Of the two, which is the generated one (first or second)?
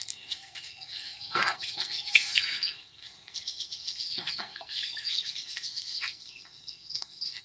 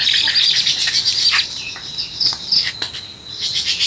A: first